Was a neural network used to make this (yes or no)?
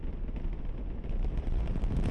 no